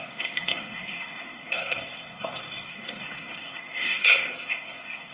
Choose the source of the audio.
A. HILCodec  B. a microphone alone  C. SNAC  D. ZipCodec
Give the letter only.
C